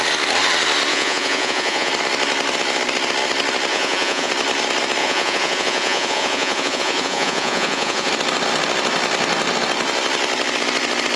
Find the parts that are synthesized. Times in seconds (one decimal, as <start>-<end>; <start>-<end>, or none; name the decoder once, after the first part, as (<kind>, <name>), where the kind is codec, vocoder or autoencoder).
0.9-1.9 (vocoder, Vocos); 3.7-4.3; 5.0-8.1